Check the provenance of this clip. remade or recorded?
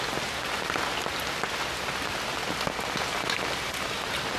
recorded